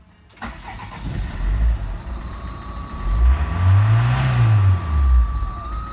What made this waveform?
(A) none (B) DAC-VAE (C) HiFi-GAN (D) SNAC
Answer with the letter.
A